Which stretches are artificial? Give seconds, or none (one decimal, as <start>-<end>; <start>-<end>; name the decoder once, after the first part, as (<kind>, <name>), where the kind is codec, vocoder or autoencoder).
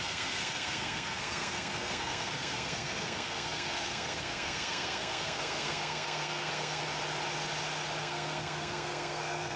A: 0.0-6.8 (codec, SNAC); 8.0-9.6